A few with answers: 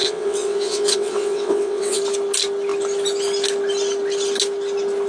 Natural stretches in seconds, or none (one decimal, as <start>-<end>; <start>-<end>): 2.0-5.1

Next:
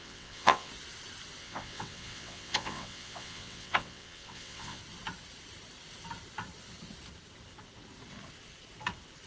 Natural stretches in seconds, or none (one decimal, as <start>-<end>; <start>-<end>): 0.7-1.4; 4.8-9.3

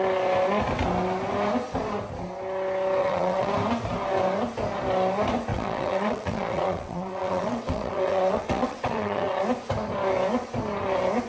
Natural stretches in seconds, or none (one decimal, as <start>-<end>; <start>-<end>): 0.0-3.0; 3.5-5.5; 9.4-11.3

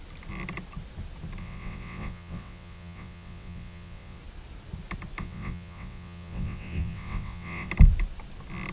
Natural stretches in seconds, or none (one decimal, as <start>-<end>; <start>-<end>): 0.0-1.4; 4.2-5.2; 7.7-8.7

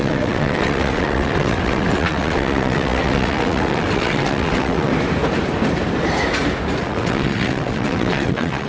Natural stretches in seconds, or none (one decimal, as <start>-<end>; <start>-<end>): 4.9-6.8